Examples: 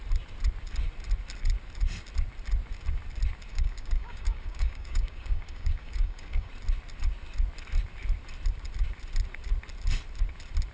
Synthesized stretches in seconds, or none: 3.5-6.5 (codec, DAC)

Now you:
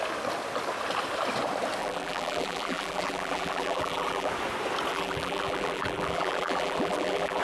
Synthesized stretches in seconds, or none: 1.8-4.3 (vocoder, BigVGAN v2); 4.9-7.4

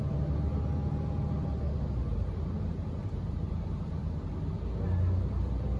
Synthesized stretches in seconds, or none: 2.1-4.3 (vocoder, BigVGAN v2)

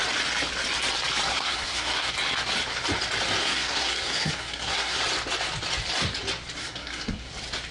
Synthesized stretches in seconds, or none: 1.3-2.1 (codec, SNAC); 3.4-5.0; 6.6-7.3